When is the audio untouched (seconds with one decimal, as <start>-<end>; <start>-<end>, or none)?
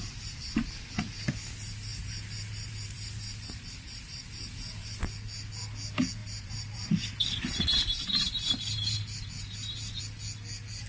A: 0.0-1.9; 5.0-6.2; 10.0-10.9